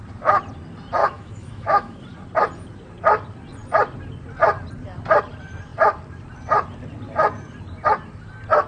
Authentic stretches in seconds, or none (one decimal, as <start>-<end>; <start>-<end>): 0.0-1.0; 2.0-8.7